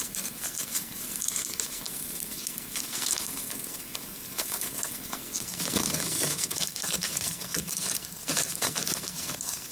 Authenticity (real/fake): fake